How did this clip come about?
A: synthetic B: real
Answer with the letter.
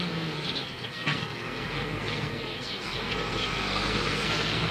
A